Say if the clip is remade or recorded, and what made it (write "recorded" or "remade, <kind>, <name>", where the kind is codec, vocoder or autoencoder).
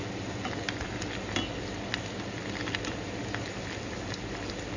recorded